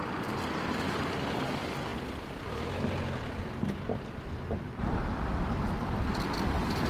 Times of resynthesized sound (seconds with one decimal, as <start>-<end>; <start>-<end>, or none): none

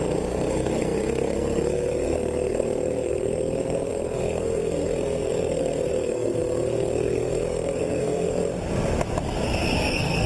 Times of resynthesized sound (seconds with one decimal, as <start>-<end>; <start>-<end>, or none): 0.0-8.4; 9.9-10.3